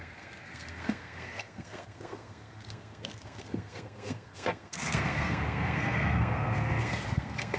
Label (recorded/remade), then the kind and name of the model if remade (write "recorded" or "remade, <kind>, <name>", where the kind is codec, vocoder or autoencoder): remade, codec, SNAC